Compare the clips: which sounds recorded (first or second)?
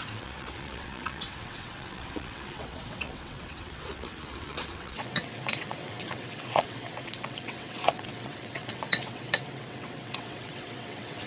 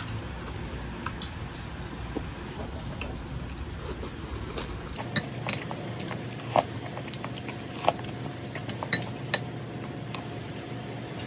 second